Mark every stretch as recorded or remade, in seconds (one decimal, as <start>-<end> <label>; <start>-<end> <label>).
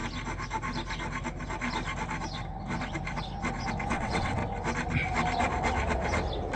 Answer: 0.0-3.9 recorded; 3.9-4.4 remade; 4.4-6.6 recorded